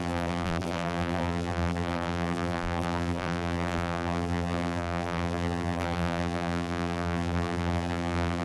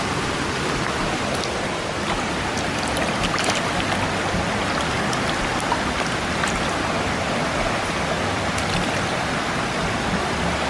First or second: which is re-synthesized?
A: first